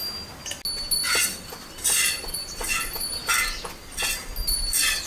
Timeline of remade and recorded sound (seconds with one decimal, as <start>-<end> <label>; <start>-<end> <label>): 0.0-1.0 recorded; 1.0-3.0 remade; 3.0-5.1 recorded

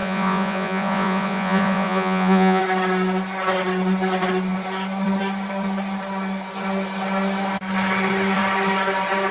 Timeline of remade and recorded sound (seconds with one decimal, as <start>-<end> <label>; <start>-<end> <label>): 0.0-2.6 remade; 2.6-9.3 recorded

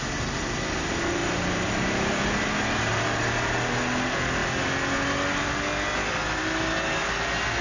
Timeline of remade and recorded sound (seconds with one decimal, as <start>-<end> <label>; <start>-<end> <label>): 0.0-7.6 recorded

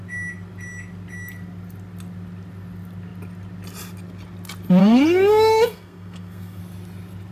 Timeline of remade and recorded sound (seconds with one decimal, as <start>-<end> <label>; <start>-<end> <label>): 0.0-4.8 recorded; 4.8-6.6 remade; 6.6-7.3 recorded

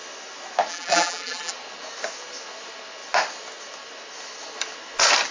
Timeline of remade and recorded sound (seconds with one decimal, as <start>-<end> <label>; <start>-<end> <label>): 0.0-0.7 recorded; 0.7-1.5 remade; 1.5-5.3 recorded

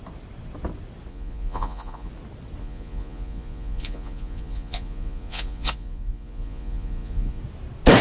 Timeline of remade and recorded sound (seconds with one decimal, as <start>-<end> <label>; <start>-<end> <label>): 0.0-1.1 recorded; 1.1-2.1 remade; 2.1-2.6 recorded; 2.6-7.4 remade; 7.4-8.0 recorded

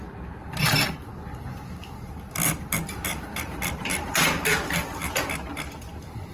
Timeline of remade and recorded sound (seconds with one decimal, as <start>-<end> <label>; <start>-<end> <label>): 0.0-0.4 recorded; 0.4-4.2 remade; 4.2-6.3 recorded